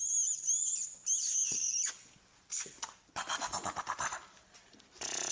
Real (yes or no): yes